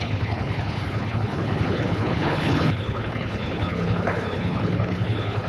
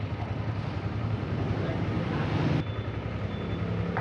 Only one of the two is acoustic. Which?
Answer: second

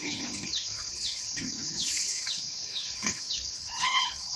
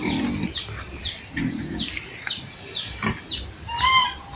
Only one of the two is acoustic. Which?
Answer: second